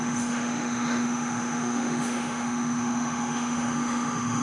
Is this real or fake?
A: fake